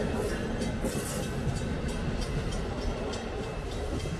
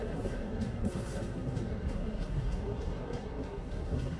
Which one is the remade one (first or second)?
second